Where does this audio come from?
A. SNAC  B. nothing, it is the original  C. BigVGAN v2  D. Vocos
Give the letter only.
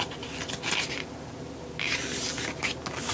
B